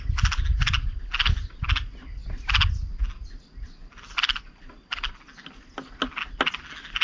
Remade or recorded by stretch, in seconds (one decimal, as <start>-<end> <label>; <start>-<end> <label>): 0.0-7.0 recorded